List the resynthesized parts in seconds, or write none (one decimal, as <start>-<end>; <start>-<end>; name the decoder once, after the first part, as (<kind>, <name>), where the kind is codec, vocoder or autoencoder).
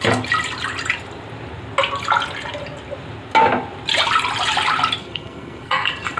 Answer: 5.0-6.2 (codec, SNAC)